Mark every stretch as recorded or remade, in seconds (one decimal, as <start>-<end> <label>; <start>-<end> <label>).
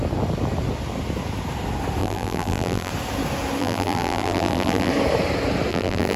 0.0-2.0 recorded; 2.0-2.9 remade; 2.9-3.6 recorded; 3.6-4.9 remade; 4.9-5.7 recorded; 5.7-6.2 remade